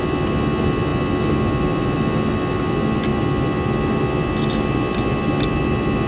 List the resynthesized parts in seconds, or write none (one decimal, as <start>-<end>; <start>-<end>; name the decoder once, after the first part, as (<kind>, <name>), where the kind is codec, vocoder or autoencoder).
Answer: none